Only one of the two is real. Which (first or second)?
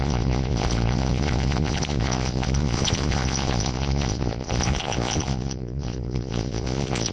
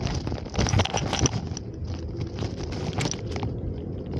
second